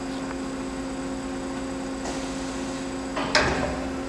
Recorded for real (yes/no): yes